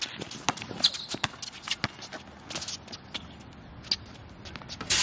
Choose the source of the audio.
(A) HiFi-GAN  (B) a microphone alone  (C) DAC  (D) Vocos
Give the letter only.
B